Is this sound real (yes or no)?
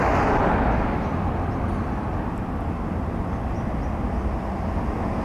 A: yes